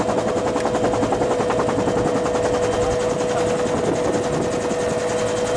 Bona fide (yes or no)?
yes